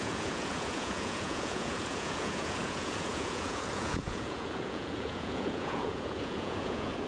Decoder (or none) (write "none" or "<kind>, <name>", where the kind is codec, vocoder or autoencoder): vocoder, Vocos